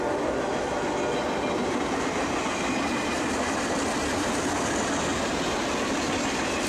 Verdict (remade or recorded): recorded